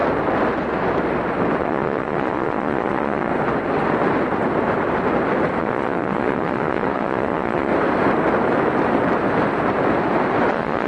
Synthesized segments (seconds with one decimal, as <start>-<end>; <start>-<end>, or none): 1.6-3.3; 5.6-7.7; 10.5-10.9